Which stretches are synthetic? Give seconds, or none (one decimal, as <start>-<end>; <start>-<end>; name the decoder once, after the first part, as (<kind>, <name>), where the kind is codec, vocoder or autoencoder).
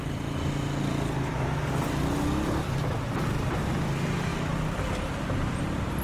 4.3-5.6 (vocoder, BigVGAN v2)